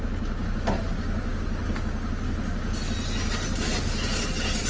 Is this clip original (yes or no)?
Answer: yes